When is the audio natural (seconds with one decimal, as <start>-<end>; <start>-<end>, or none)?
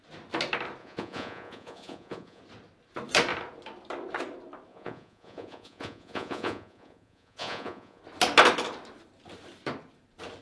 0.0-0.8; 2.4-4.7; 8.0-10.4